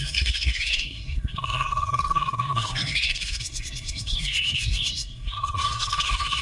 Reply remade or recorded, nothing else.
remade